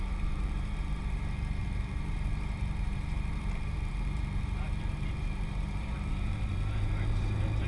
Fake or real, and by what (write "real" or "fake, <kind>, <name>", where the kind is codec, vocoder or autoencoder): fake, vocoder, BigVGAN v2